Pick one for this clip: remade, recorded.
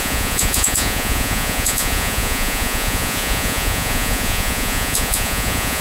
remade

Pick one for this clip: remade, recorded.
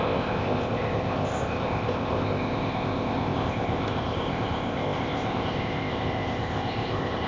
remade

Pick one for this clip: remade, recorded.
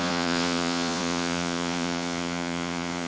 remade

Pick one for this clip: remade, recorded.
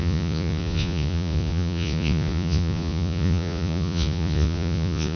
remade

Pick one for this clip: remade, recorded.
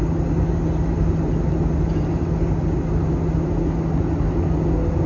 recorded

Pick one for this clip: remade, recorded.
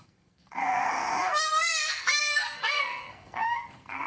remade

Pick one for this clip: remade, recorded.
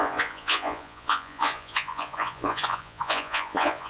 remade